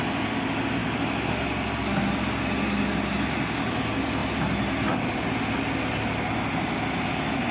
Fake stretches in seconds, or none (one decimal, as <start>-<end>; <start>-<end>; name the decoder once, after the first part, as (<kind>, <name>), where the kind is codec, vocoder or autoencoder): none